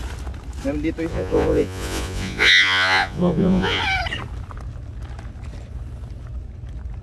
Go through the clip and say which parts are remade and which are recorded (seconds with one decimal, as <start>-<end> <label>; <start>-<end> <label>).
0.0-1.1 recorded; 1.1-3.8 remade; 3.8-7.0 recorded